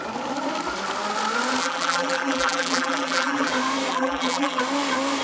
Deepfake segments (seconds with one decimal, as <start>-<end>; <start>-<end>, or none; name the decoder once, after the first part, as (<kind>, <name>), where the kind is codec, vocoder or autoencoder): 1.6-3.5 (vocoder, BigVGAN v2); 3.9-4.6